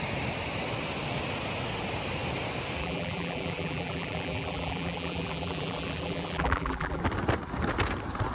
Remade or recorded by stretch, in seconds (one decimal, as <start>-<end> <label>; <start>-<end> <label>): 0.0-2.8 recorded; 2.8-7.0 remade; 7.0-8.3 recorded